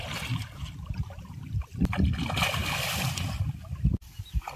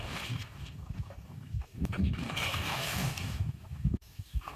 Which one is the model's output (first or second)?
second